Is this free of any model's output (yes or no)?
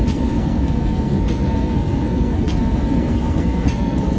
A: no